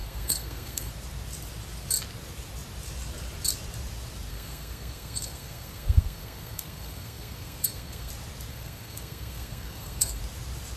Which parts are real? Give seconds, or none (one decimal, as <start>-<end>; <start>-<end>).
0.9-4.3; 8.1-8.5; 10.2-10.8